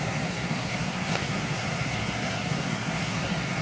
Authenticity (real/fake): fake